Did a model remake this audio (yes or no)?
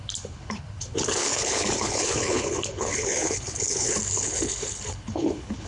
yes